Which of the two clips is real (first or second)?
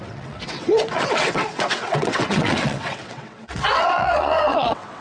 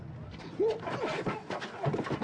second